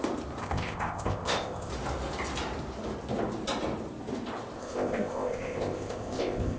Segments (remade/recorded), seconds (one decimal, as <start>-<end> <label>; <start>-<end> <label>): 0.0-0.4 recorded; 0.4-1.7 remade; 1.7-4.6 recorded; 4.6-6.6 remade